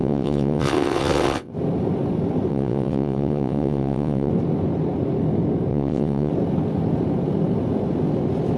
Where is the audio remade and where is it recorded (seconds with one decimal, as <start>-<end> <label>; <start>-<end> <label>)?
0.0-1.5 remade; 1.5-2.5 recorded; 2.5-4.3 remade; 4.3-5.7 recorded; 5.7-6.3 remade; 6.3-8.6 recorded